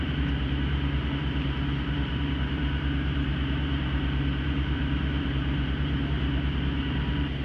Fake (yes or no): yes